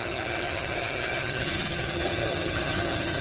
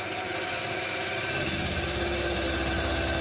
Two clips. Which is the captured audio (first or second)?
second